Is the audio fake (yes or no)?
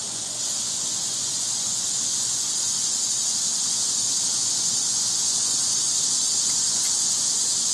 yes